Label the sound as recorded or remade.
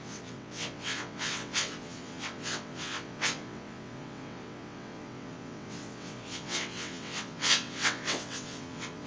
remade